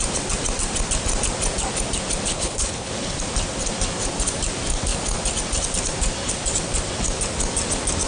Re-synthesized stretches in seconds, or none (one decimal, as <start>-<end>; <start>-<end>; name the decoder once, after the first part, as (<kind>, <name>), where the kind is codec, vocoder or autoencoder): 2.3-2.9 (codec, HILCodec)